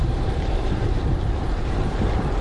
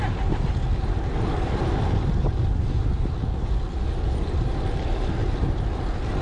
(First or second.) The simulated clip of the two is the first